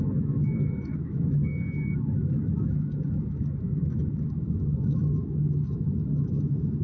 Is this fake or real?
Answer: fake